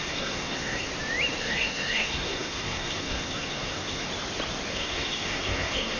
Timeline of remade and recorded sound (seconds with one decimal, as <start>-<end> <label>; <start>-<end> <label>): 0.0-0.9 remade; 0.9-1.4 recorded; 1.4-4.1 remade; 4.1-4.7 recorded; 4.7-6.0 remade